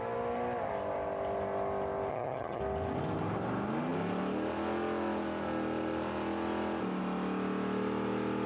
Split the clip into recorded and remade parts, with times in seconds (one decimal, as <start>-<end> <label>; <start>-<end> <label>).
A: 0.0-2.1 recorded; 2.1-2.6 remade; 2.6-8.5 recorded